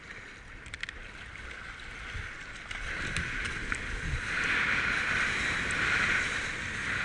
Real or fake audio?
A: real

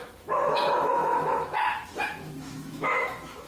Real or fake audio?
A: fake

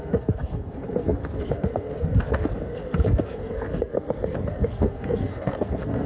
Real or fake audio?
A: fake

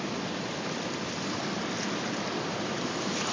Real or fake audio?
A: real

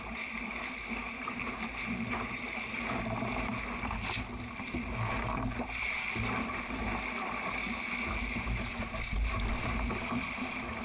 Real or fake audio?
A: real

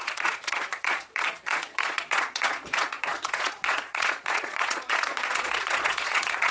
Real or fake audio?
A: fake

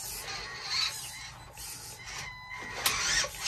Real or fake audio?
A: real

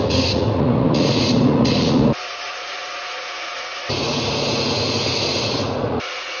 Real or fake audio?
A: fake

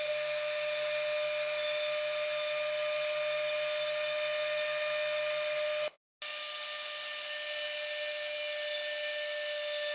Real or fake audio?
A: real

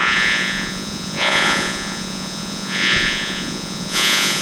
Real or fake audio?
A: fake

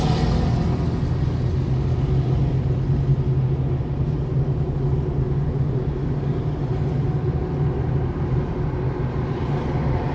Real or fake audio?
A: real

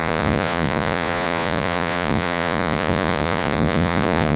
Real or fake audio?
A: fake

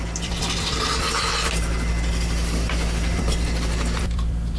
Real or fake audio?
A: fake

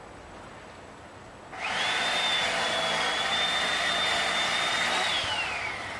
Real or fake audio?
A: real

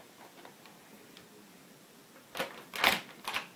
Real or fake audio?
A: real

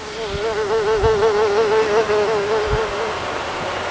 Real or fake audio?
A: real